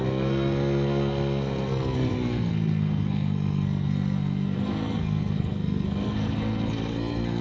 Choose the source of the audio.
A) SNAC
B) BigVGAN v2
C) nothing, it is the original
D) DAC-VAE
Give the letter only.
A